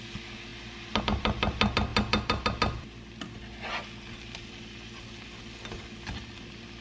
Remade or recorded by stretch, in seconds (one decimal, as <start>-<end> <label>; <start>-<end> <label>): 0.0-6.8 recorded